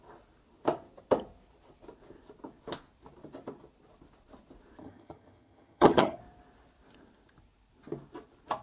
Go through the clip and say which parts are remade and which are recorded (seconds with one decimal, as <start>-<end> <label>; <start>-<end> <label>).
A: 0.0-4.8 recorded; 4.8-6.2 remade; 6.2-8.6 recorded